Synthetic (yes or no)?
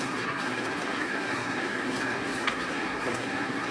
yes